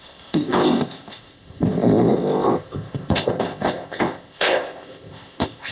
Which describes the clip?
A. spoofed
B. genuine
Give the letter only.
A